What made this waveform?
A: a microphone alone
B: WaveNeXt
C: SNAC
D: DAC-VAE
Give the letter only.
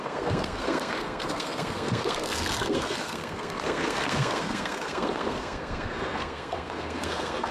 C